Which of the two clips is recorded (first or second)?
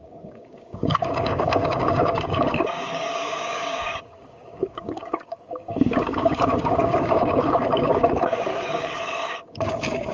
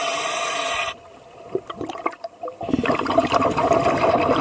second